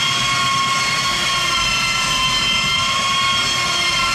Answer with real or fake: real